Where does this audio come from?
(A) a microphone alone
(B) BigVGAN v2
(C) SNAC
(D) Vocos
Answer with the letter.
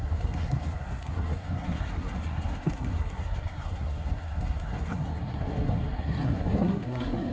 C